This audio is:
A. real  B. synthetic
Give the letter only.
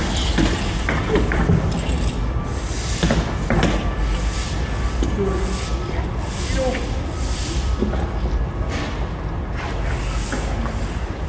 A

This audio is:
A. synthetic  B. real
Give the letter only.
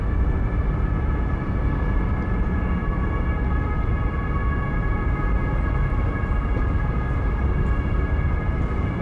B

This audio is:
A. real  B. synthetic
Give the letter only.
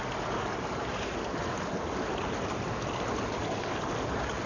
A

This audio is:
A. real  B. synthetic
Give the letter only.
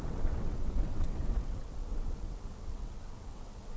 B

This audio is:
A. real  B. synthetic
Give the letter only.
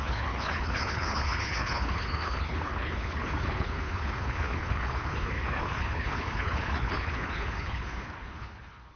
B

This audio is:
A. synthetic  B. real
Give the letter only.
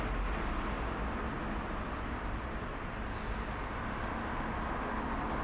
B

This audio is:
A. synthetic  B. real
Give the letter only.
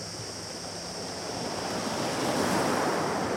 B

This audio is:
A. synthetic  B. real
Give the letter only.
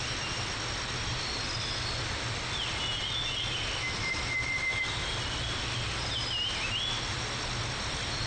B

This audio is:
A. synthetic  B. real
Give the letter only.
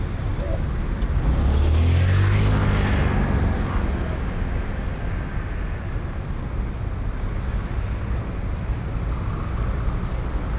B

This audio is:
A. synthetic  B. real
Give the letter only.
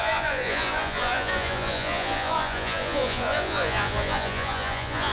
A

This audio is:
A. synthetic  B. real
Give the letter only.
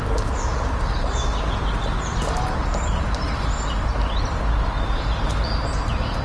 B